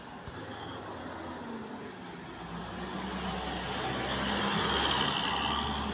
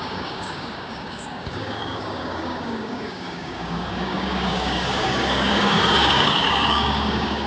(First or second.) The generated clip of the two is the second